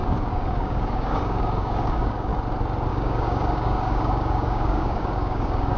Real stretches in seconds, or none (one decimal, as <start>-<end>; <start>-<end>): 2.3-2.9